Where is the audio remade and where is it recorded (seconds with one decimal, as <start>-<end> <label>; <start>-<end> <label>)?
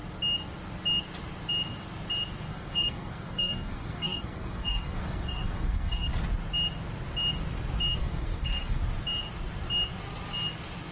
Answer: 0.0-2.5 recorded; 2.5-6.1 remade; 6.1-8.0 recorded; 8.0-8.8 remade; 8.8-10.9 recorded